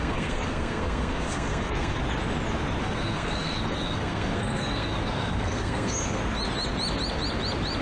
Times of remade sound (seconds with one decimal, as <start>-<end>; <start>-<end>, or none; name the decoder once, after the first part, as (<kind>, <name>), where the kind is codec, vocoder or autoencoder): 0.0-2.0 (codec, SNAC); 2.8-6.2